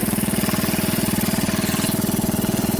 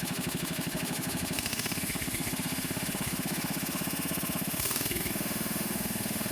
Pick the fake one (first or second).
second